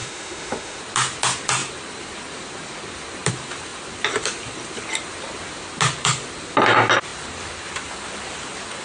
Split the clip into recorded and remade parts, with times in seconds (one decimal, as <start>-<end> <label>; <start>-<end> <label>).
0.0-0.8 remade; 0.8-8.8 recorded